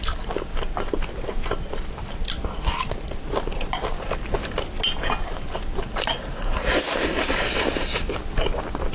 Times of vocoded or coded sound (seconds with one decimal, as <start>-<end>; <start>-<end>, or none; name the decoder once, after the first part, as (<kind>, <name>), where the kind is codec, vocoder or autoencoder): none